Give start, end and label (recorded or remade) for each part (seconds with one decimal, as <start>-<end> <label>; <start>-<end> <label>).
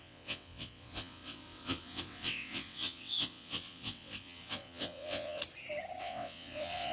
0.0-5.4 remade; 5.4-6.0 recorded; 6.0-6.9 remade